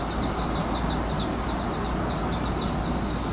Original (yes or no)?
yes